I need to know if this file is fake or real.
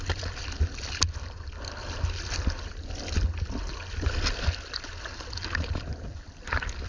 real